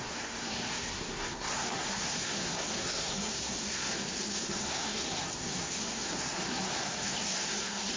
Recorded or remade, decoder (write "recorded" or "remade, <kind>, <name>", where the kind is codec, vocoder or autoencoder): remade, codec, SNAC